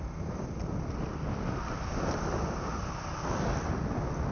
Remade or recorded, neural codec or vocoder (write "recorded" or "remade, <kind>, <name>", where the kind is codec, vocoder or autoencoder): recorded